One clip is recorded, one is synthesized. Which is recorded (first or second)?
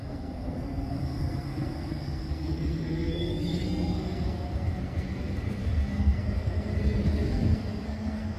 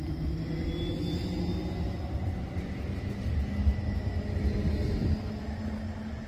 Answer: second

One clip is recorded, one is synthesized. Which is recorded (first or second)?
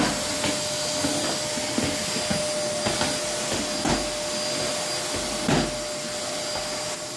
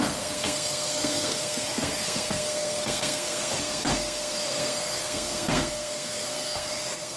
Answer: first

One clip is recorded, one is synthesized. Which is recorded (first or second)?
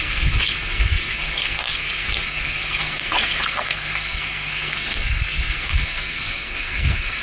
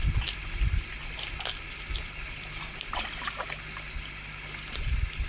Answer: second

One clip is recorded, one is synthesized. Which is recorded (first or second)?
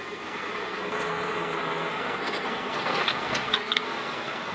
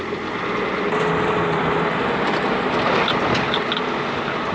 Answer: second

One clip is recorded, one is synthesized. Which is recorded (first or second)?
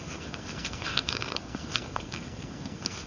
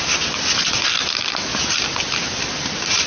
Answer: second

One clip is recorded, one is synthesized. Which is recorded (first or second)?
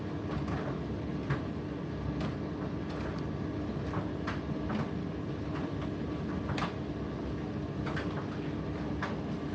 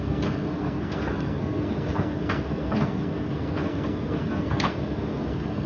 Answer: first